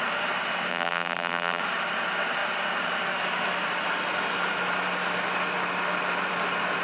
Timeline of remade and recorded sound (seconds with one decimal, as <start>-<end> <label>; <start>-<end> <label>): 0.0-0.7 recorded; 0.7-1.6 remade; 1.6-6.8 recorded